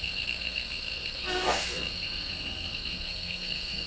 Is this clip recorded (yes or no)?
no